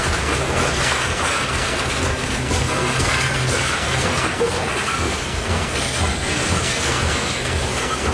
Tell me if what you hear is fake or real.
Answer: fake